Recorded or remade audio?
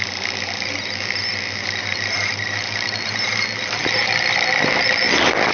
recorded